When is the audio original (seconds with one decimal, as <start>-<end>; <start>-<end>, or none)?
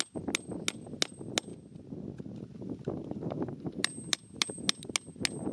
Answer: 0.0-5.5